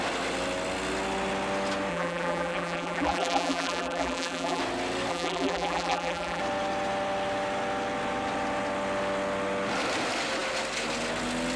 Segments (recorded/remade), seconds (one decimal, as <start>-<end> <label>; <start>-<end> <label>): 0.0-1.9 recorded; 1.9-4.6 remade; 4.6-5.1 recorded; 5.1-6.4 remade; 6.4-11.6 recorded